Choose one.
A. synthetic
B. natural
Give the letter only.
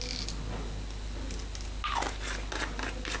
B